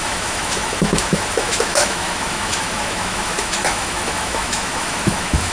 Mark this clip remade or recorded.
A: remade